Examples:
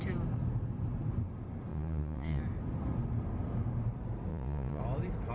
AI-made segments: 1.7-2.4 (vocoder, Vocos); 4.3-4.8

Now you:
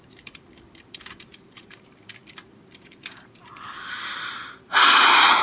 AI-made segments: 0.0-5.4 (vocoder, BigVGAN v2)

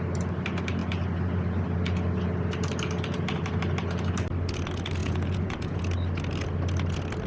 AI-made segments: 5.0-5.8 (vocoder, Vocos)

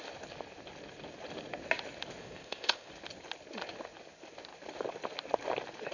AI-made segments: 2.2-2.9 (codec, ZipCodec)

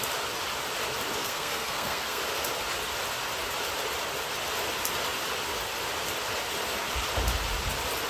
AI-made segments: 1.2-2.2 (codec, SNAC)

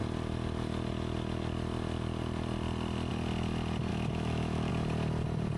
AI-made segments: 3.9-4.7 (autoencoder, DAC-VAE)